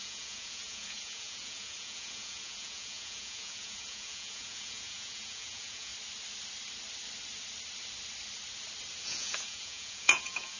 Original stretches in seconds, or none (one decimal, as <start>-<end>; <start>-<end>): 5.9-9.0